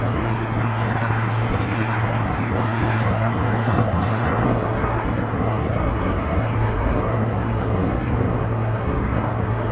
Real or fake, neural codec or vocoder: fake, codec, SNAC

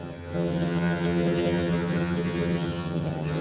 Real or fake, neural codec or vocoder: fake, vocoder, HiFi-GAN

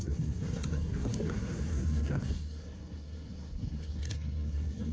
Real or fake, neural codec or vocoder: fake, codec, SNAC